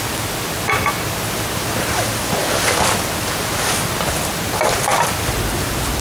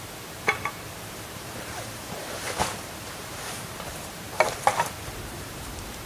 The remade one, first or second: second